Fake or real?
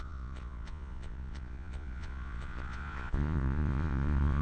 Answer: fake